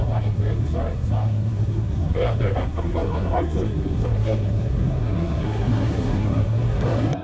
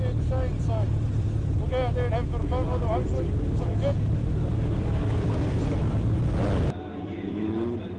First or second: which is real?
second